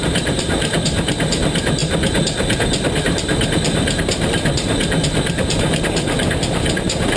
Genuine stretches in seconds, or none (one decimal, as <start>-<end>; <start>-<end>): 1.8-3.0